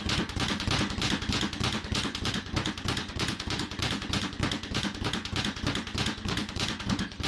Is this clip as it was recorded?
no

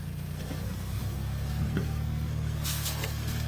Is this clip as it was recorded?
no